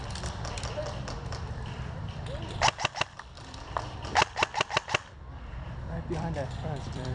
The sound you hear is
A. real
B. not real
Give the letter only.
B